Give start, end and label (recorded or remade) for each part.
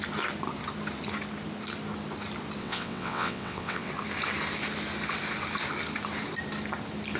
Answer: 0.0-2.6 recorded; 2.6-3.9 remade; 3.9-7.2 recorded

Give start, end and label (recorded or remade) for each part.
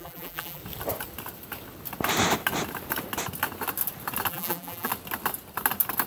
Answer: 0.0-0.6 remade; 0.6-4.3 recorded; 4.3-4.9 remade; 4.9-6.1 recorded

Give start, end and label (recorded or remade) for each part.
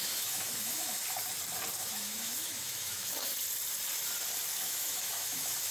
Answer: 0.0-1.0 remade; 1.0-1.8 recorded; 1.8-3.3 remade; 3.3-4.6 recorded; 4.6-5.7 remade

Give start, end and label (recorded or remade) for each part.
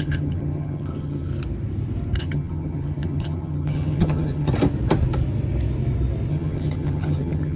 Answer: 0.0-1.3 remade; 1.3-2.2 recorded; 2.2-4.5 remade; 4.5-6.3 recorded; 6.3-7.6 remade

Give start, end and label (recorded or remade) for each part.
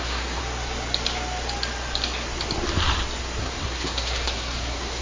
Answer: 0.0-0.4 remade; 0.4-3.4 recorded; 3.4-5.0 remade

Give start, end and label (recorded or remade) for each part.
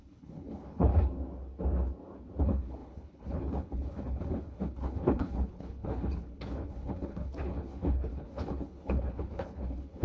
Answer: 0.0-0.9 remade; 0.9-2.4 recorded; 2.4-10.0 remade